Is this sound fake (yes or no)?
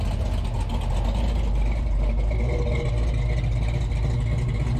no